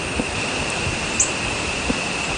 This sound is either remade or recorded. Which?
recorded